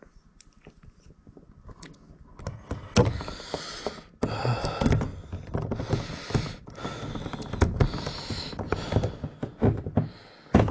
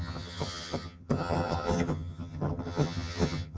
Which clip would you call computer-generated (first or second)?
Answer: second